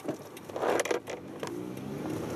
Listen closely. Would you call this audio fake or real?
real